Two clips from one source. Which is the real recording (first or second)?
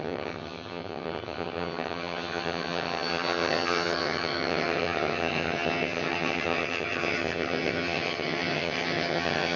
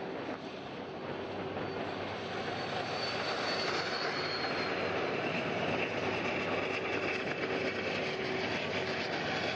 second